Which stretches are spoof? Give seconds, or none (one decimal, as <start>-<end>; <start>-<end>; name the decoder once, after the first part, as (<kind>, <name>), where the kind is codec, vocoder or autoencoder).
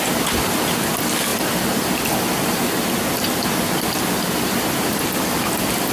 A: none